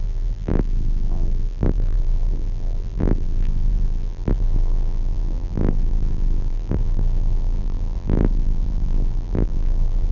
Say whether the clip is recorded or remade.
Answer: remade